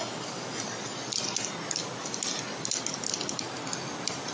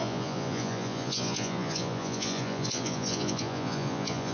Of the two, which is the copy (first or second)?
second